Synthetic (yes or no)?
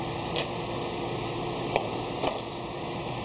no